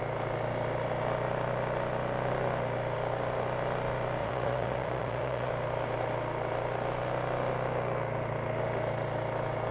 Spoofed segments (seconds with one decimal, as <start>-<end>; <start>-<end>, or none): 4.2-5.5